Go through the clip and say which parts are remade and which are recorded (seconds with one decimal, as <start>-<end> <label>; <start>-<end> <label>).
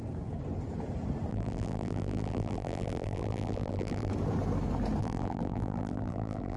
0.0-1.3 recorded; 1.3-4.1 remade; 4.1-5.0 recorded; 5.0-6.6 remade